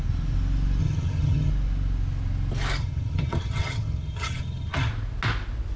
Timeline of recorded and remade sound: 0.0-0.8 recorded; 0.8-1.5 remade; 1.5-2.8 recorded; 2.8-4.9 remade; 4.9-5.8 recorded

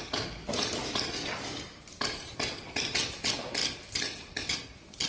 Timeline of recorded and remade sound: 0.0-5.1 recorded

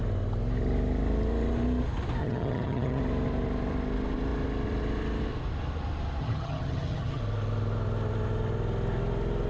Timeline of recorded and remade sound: 0.0-2.2 recorded; 2.2-3.0 remade; 3.0-6.2 recorded; 6.2-7.2 remade; 7.2-9.5 recorded

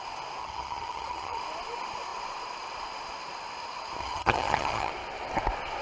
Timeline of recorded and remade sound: 0.0-0.4 recorded; 0.4-1.4 remade; 1.4-4.0 recorded; 4.0-4.9 remade; 4.9-5.8 recorded

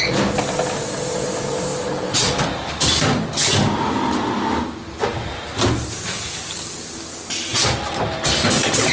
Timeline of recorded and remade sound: 0.0-8.9 recorded

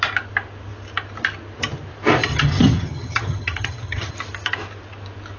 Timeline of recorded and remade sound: 0.0-2.3 recorded; 2.3-4.1 remade; 4.1-5.4 recorded

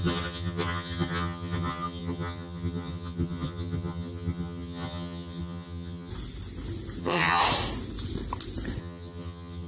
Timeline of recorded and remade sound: 0.0-6.1 remade; 6.1-7.0 recorded; 7.0-7.4 remade; 7.4-8.8 recorded; 8.8-9.7 remade